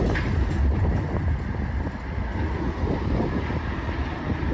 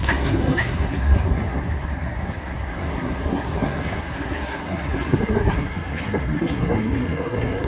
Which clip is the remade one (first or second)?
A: second